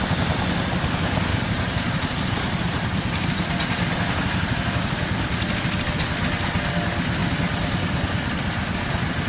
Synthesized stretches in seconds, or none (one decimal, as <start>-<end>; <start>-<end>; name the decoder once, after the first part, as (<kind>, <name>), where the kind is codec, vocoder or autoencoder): 1.3-2.9 (vocoder, BigVGAN v2)

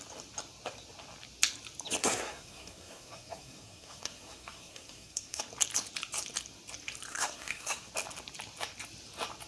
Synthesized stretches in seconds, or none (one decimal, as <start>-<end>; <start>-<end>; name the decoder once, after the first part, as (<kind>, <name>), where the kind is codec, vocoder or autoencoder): 2.0-5.4 (codec, SNAC); 7.1-7.9

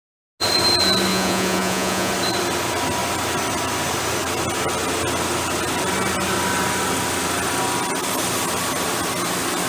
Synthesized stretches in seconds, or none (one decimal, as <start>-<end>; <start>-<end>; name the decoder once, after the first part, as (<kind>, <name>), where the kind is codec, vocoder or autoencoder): 1.1-2.1 (vocoder, Vocos)